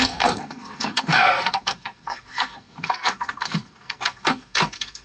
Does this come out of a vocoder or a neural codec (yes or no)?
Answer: yes